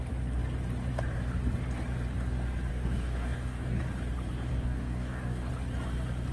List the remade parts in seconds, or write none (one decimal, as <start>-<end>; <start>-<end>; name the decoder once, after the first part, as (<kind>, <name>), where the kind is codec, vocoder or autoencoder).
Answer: 2.7-3.8 (codec, DAC); 4.5-5.5

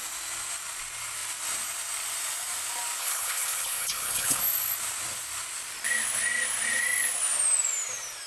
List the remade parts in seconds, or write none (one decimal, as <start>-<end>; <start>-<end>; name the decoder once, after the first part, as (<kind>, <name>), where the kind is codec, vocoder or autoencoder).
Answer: 3.0-4.4 (codec, HILCodec)

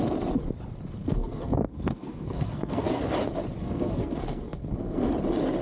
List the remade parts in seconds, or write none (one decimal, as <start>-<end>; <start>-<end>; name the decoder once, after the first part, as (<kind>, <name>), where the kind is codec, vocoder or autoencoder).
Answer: 1.0-3.0 (codec, SNAC); 3.6-5.1

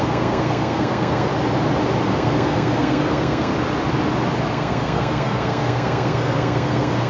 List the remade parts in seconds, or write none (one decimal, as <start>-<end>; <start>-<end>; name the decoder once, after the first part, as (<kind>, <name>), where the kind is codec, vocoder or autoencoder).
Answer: 0.0-1.3 (codec, SNAC); 2.1-3.5; 4.5-7.1